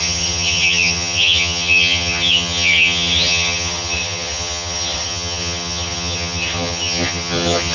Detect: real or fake fake